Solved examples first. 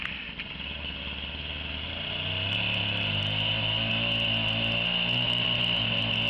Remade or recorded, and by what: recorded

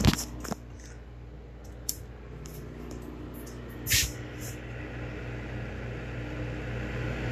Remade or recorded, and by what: recorded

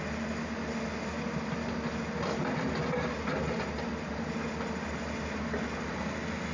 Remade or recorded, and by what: recorded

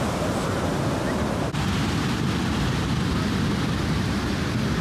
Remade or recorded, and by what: recorded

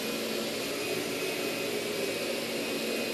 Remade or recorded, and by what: recorded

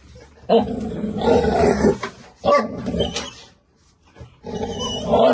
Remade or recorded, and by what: remade, vocoder, BigVGAN v2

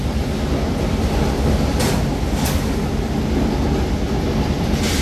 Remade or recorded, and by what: recorded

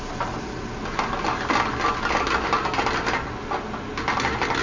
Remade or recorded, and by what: recorded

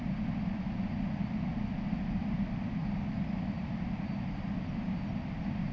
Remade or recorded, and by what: recorded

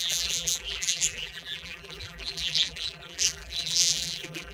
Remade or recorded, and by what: remade, vocoder, BigVGAN v2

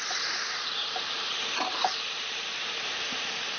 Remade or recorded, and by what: remade, vocoder, BigVGAN v2